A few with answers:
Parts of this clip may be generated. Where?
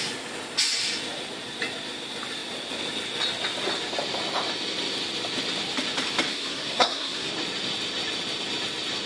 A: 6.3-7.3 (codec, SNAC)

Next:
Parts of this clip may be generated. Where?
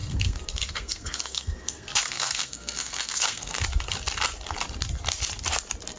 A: 0.0-3.6 (codec, SNAC)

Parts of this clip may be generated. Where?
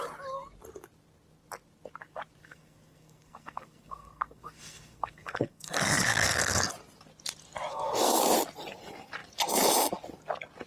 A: 2.4-6.7 (codec, SNAC); 7.7-8.2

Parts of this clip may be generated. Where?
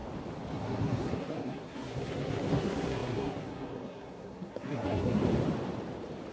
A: 0.5-5.2 (codec, SNAC)